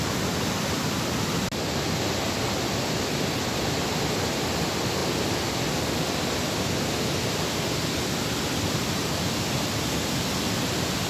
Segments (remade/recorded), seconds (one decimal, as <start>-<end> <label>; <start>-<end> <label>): 0.0-11.1 recorded